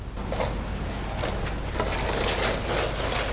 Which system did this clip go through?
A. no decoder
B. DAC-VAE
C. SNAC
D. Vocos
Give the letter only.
A